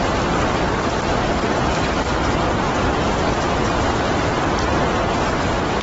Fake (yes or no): no